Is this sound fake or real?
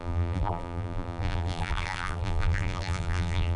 fake